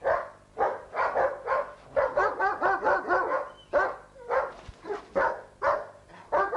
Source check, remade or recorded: recorded